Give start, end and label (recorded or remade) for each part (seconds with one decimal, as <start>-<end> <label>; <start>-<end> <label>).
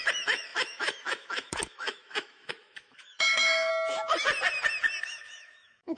0.0-3.7 remade; 3.7-5.0 recorded; 5.0-6.0 remade